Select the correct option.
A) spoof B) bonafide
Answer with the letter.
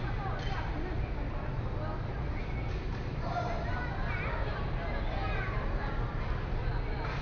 B